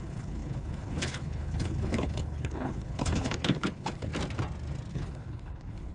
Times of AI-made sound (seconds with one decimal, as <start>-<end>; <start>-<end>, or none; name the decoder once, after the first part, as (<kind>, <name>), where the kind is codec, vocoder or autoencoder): 0.0-4.1 (codec, HILCodec); 4.9-5.9

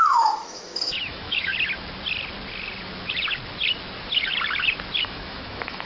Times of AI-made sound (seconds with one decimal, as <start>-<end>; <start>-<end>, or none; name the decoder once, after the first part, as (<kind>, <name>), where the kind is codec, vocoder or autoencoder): 0.0-1.5 (autoencoder, DAC-VAE); 5.0-5.9

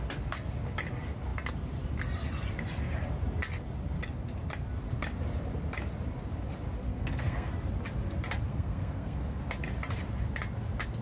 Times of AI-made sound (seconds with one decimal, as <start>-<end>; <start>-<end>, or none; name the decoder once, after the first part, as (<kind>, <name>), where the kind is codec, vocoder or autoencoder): 6.9-7.5 (codec, SNAC); 8.5-9.4

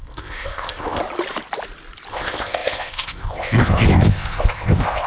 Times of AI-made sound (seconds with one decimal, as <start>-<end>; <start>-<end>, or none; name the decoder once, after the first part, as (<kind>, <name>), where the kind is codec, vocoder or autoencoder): 0.0-1.0 (codec, ZipCodec); 2.1-5.1

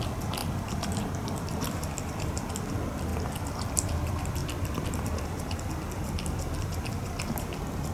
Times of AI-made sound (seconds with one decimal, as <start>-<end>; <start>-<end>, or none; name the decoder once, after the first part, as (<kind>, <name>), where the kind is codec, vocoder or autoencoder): 0.4-1.9 (vocoder, BigVGAN v2)

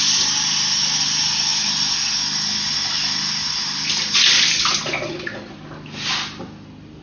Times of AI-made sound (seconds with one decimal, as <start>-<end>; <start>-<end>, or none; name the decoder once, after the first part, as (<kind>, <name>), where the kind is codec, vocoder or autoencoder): none

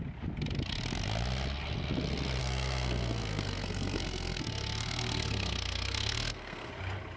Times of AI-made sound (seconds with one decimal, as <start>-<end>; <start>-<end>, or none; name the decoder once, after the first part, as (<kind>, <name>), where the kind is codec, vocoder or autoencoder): 2.4-6.7 (codec, SNAC)

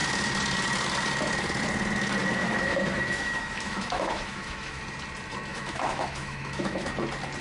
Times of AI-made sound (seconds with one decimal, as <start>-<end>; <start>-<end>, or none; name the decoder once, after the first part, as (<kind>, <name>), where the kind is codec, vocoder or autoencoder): 2.4-4.8 (autoencoder, DAC-VAE); 5.5-6.9